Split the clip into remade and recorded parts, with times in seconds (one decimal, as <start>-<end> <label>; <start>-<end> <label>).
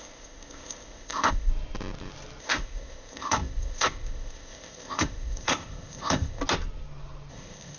0.0-1.5 remade; 1.5-2.4 recorded; 2.4-6.4 remade; 6.4-7.3 recorded; 7.3-7.8 remade